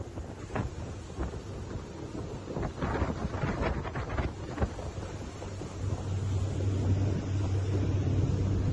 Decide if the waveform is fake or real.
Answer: real